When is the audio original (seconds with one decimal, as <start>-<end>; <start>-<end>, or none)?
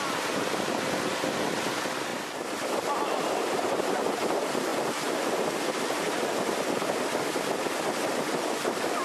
0.0-9.0